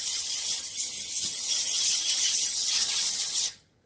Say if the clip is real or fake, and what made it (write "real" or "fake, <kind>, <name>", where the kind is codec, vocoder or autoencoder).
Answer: fake, vocoder, HiFi-GAN